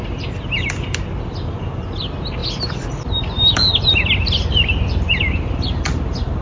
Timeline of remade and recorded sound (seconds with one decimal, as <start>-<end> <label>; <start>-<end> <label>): 0.0-6.4 recorded